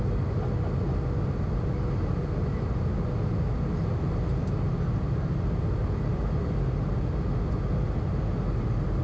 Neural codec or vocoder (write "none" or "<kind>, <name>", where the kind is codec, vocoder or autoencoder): none